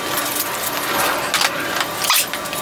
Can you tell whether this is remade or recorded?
recorded